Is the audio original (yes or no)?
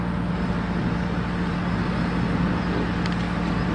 yes